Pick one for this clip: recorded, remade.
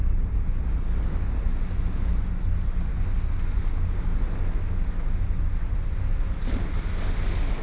recorded